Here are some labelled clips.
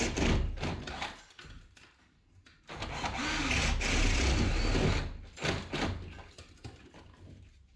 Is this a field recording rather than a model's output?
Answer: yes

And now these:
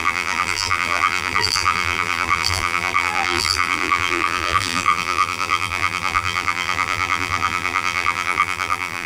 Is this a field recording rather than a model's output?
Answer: no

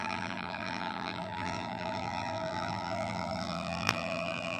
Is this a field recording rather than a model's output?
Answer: no